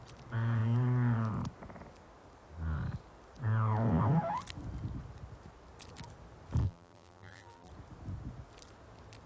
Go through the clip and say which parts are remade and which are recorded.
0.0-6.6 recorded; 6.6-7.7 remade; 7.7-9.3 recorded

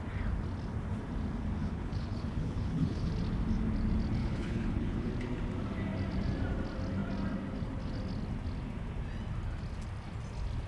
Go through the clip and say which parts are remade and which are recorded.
0.0-1.6 recorded; 1.6-3.1 remade; 3.1-4.2 recorded; 4.2-5.1 remade; 5.1-10.7 recorded

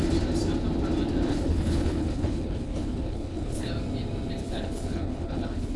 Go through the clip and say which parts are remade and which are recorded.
0.0-1.3 recorded; 1.3-3.7 remade; 3.7-4.4 recorded; 4.4-5.8 remade

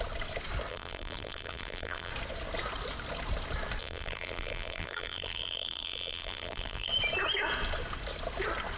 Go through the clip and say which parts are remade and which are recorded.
0.0-0.7 recorded; 0.7-2.1 remade; 2.1-3.8 recorded; 3.8-6.9 remade; 6.9-8.8 recorded

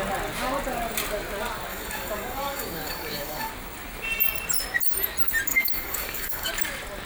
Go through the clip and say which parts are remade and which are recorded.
0.0-1.7 recorded; 1.7-3.5 remade; 3.5-5.5 recorded; 5.5-6.5 remade; 6.5-7.1 recorded